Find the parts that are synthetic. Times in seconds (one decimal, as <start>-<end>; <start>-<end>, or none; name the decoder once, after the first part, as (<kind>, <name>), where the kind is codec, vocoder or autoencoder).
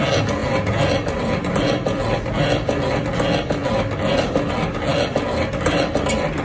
none